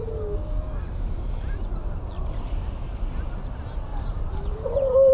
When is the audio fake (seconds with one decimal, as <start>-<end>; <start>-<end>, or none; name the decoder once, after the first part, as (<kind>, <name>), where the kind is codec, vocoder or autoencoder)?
3.9-5.1 (vocoder, BigVGAN v2)